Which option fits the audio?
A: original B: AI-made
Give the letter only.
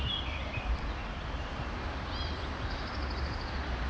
B